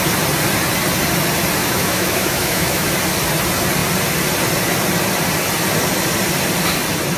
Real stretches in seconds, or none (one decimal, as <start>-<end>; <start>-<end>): 0.0-1.6; 2.9-7.2

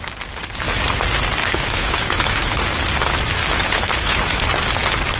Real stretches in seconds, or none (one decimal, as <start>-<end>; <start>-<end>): 0.0-1.4; 2.6-3.4; 4.4-5.2

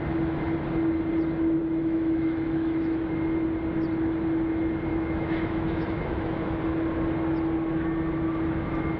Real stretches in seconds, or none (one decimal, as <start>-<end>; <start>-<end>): 0.0-1.6; 3.1-4.9; 6.6-9.0

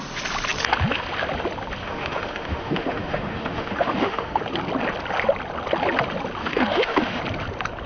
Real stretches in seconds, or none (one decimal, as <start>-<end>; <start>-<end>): 0.0-1.8; 4.4-6.4; 7.2-7.9